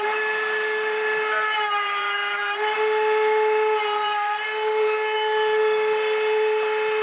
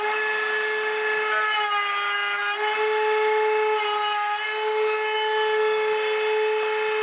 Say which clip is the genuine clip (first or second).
second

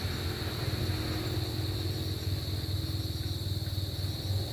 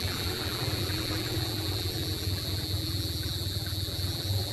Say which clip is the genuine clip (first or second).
first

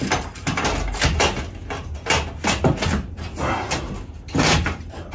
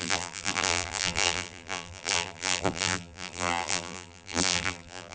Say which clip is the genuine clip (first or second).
first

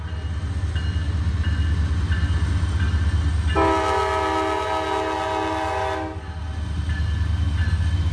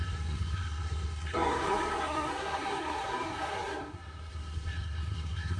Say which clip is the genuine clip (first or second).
first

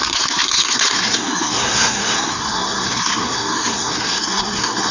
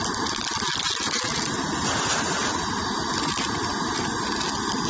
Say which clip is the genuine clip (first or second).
second